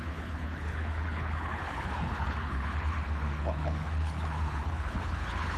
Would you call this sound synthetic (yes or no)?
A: yes